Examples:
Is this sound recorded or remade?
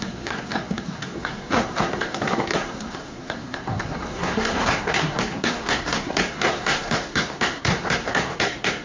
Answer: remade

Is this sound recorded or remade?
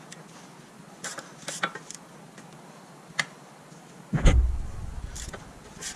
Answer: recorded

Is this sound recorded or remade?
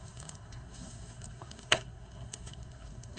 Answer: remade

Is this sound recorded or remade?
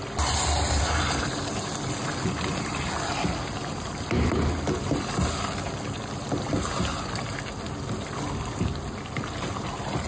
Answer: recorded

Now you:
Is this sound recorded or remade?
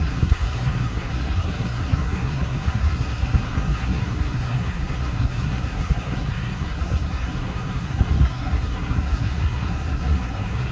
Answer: remade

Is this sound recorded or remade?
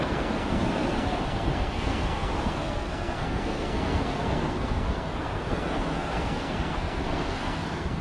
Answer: remade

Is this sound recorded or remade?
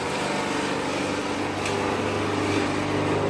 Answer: recorded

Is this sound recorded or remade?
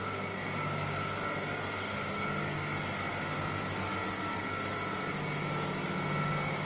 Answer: recorded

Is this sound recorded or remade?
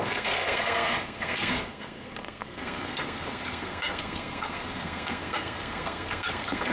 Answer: remade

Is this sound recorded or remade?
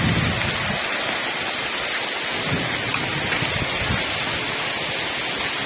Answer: recorded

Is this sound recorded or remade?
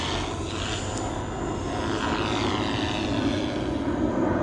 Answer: recorded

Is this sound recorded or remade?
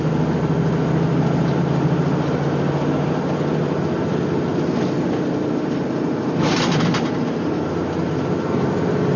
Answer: recorded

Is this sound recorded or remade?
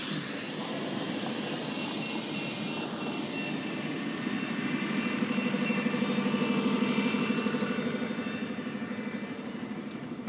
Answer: recorded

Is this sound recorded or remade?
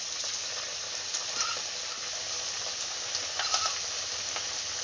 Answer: recorded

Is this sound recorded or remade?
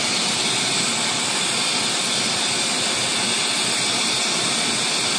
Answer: recorded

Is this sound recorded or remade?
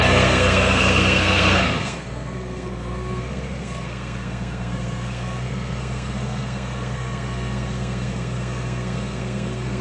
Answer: remade